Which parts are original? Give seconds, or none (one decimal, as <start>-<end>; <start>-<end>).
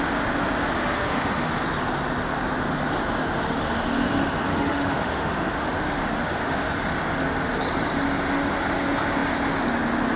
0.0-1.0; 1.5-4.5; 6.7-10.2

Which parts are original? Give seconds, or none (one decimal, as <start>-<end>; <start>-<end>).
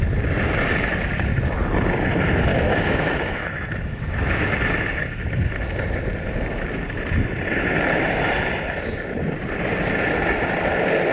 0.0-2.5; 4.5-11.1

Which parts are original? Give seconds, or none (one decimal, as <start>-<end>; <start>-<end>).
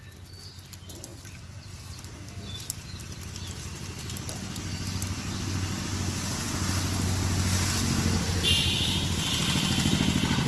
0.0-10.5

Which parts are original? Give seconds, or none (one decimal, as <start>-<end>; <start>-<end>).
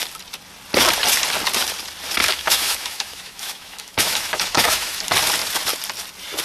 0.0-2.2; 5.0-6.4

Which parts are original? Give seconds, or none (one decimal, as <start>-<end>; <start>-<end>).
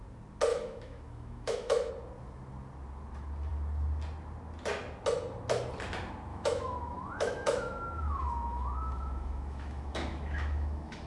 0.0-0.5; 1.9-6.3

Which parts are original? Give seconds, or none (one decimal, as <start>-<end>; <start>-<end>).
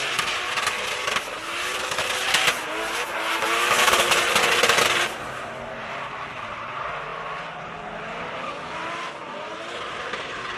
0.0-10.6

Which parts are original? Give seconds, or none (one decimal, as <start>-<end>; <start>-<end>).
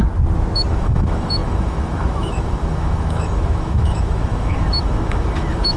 0.0-0.7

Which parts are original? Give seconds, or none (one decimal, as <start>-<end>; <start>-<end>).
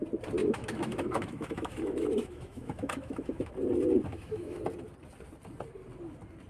0.0-0.4; 3.5-4.1; 4.6-6.5